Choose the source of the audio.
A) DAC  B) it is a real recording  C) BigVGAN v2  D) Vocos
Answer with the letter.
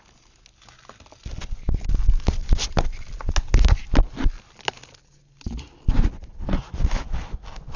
B